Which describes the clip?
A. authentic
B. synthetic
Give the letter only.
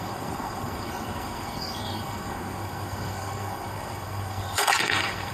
B